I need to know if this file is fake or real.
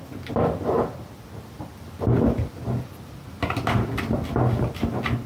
real